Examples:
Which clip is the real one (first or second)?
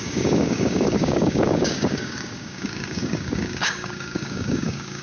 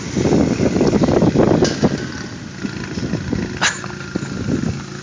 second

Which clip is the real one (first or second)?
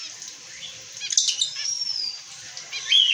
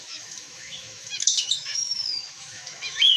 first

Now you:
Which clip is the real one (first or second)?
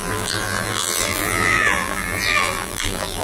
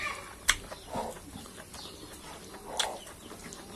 second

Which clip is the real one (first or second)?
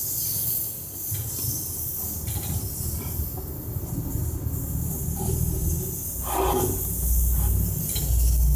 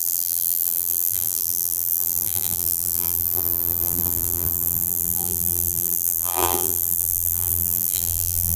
first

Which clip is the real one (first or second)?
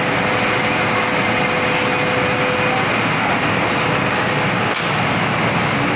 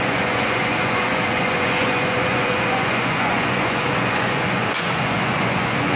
first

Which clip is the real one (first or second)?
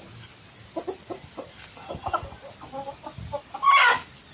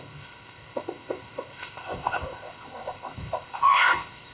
first